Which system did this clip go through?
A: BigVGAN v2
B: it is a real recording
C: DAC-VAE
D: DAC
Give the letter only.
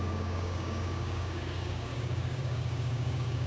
D